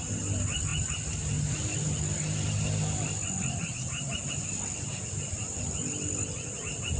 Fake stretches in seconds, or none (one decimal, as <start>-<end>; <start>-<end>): none